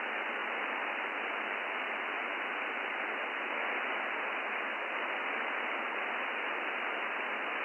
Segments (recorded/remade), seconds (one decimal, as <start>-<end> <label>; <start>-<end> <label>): 0.0-7.6 recorded